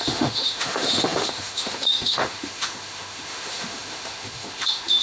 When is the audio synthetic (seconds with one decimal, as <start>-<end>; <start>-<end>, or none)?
0.0-5.0